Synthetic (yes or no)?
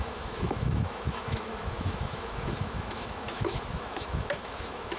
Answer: yes